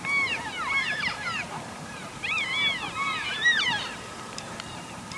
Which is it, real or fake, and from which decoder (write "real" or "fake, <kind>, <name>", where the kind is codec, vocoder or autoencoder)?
fake, vocoder, BigVGAN v2